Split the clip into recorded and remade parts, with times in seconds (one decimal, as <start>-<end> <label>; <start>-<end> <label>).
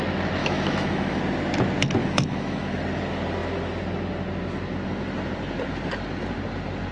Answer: 0.0-0.4 recorded; 0.4-1.2 remade; 1.2-2.0 recorded; 2.0-2.8 remade; 2.8-6.9 recorded